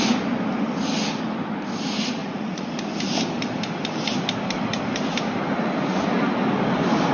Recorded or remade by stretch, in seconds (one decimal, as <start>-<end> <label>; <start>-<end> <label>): 0.0-2.2 recorded; 2.2-2.7 remade; 2.7-7.1 recorded